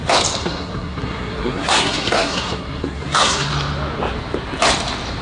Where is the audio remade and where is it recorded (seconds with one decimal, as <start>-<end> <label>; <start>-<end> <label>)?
0.0-0.4 recorded; 0.4-3.5 remade; 3.5-5.2 recorded